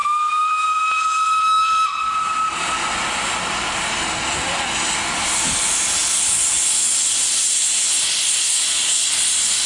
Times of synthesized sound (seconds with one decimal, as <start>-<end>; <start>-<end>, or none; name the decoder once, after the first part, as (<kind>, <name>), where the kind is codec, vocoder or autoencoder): none